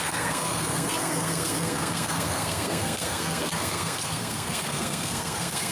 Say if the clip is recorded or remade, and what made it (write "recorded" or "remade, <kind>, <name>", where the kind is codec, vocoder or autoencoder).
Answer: remade, codec, SNAC